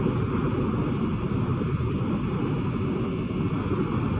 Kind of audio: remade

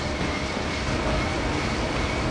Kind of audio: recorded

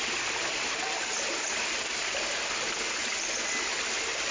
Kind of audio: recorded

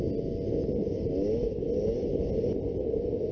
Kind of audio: recorded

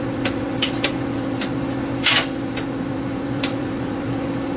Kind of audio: remade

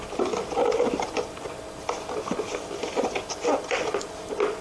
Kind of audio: recorded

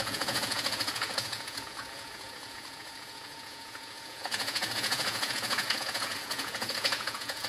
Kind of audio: remade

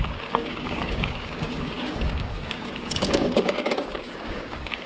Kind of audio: remade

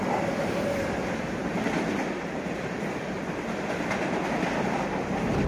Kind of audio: recorded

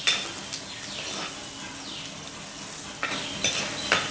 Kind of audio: recorded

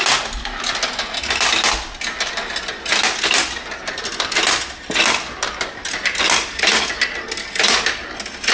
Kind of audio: recorded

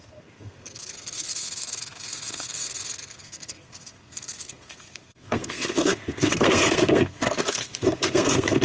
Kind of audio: remade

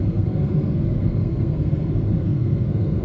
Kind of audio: remade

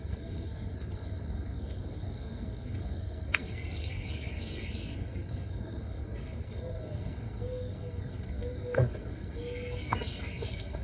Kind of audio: remade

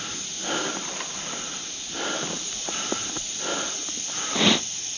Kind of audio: recorded